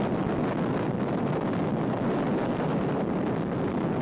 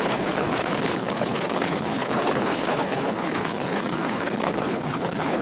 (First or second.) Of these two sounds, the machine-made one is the second